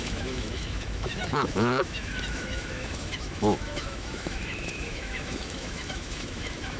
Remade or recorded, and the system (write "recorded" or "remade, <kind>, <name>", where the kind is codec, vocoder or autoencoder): remade, autoencoder, DAC-VAE